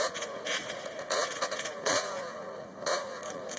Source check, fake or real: fake